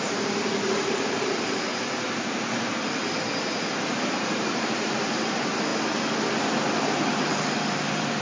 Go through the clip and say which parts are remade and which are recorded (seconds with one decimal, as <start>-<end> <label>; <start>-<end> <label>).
0.0-1.7 remade; 1.7-4.2 recorded; 4.2-5.7 remade; 5.7-7.7 recorded; 7.7-8.2 remade